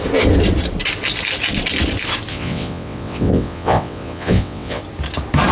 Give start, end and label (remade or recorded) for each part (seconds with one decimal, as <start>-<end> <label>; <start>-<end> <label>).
0.0-2.3 recorded; 2.3-4.8 remade; 4.8-5.5 recorded